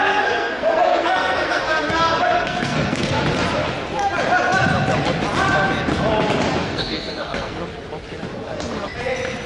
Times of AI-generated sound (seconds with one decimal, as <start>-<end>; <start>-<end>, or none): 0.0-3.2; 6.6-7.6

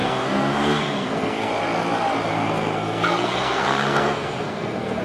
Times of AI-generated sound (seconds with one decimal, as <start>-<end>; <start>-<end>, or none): 0.0-1.5; 2.3-5.0

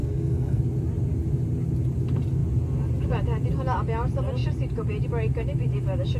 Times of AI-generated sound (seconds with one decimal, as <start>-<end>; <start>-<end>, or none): 0.0-0.6

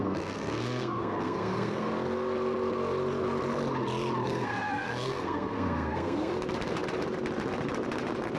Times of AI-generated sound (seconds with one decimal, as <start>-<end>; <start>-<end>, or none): 0.0-1.9; 4.3-6.3

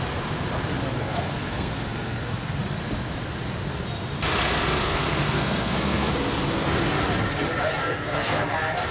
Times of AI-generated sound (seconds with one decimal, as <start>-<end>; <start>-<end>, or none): 0.9-2.6; 4.8-6.1; 7.8-8.5

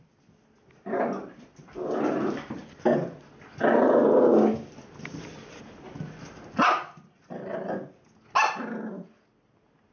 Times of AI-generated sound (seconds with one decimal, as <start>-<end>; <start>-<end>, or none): none